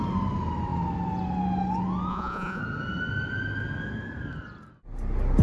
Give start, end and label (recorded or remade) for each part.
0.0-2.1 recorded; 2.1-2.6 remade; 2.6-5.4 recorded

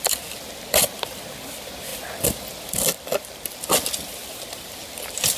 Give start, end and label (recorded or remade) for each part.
0.0-5.4 recorded

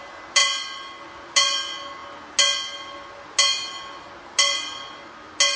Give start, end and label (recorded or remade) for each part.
0.0-5.6 recorded

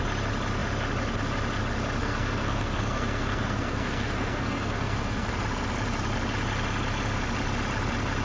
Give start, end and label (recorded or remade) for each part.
0.0-2.0 recorded; 2.0-5.3 remade; 5.3-8.2 recorded

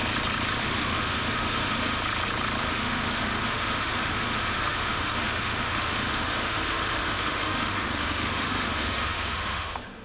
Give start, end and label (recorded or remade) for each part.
0.0-0.6 recorded; 0.6-2.0 remade; 2.0-2.6 recorded; 2.6-10.0 remade

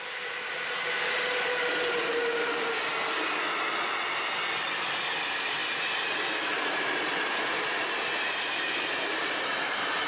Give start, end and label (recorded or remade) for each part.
0.0-10.1 recorded

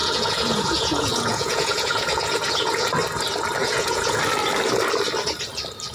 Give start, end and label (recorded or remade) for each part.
0.0-2.9 remade; 2.9-3.6 recorded; 3.6-4.2 remade; 4.2-5.9 recorded